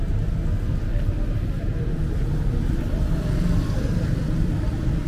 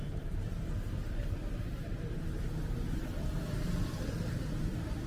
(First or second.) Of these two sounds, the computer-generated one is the second